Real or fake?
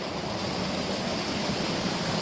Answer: real